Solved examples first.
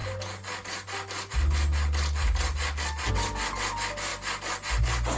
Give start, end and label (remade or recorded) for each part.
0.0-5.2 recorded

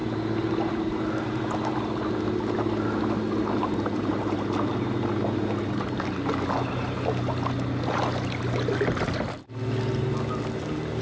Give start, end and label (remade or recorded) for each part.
0.0-11.0 recorded

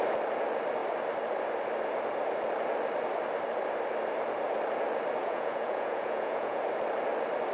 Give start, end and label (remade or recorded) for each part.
0.0-5.2 recorded; 5.2-6.6 remade; 6.6-7.5 recorded

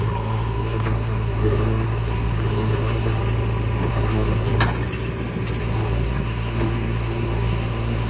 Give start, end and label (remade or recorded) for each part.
0.0-3.2 remade; 3.2-3.9 recorded; 3.9-4.5 remade; 4.5-5.6 recorded; 5.6-8.1 remade

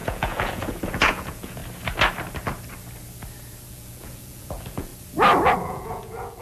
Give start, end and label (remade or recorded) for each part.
0.0-1.6 remade; 1.6-3.7 recorded; 3.7-4.9 remade; 4.9-5.5 recorded; 5.5-6.4 remade

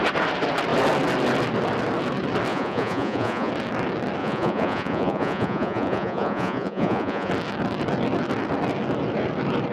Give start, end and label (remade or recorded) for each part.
0.0-2.5 recorded; 2.5-3.5 remade; 3.5-4.2 recorded; 4.2-7.3 remade; 7.3-9.7 recorded

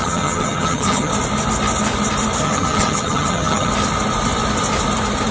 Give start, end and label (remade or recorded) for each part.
0.0-1.1 remade; 1.1-2.4 recorded; 2.4-3.7 remade; 3.7-5.3 recorded